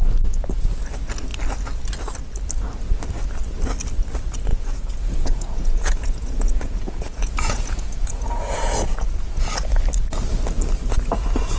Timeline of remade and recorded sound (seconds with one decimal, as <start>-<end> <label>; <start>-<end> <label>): 0.0-4.5 recorded; 4.5-9.4 remade; 9.4-11.6 recorded